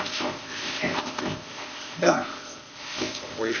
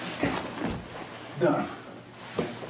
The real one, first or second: second